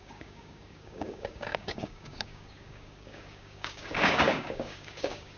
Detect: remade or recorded remade